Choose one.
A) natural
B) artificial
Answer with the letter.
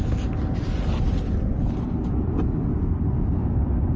A